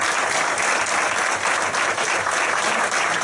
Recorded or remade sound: recorded